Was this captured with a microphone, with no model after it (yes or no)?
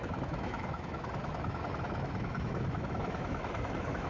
no